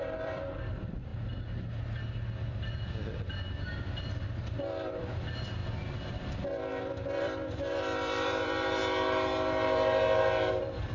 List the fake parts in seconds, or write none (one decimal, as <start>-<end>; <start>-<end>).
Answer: 0.0-1.1; 4.1-5.6; 6.8-8.8; 10.5-10.9